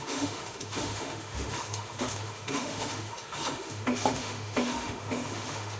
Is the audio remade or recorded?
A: remade